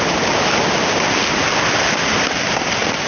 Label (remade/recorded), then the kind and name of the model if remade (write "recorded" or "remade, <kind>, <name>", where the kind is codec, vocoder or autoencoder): recorded